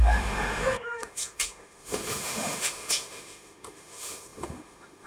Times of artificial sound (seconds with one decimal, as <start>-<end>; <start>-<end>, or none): 0.0-5.1